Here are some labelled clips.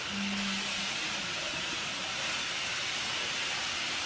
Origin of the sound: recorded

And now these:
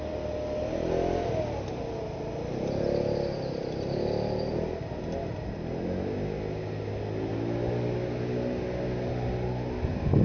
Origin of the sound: recorded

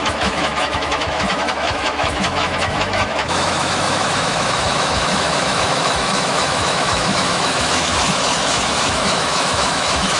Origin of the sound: remade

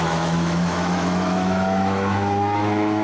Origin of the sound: remade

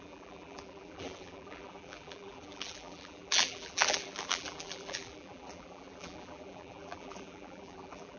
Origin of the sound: remade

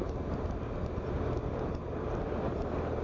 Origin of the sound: recorded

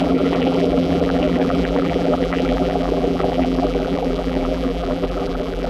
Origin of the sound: remade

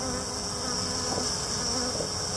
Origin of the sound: recorded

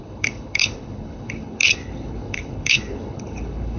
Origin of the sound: remade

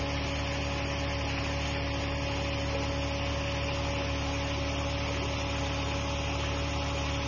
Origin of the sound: recorded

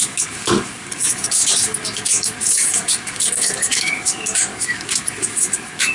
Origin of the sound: remade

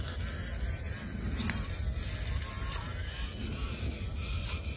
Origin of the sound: recorded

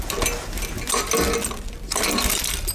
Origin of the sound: recorded